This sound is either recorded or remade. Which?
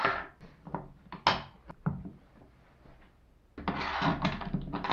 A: recorded